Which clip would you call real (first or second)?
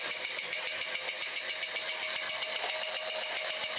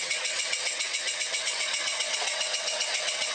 first